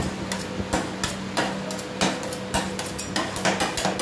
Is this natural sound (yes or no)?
yes